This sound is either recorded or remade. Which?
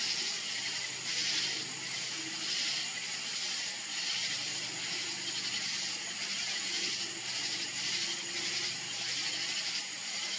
recorded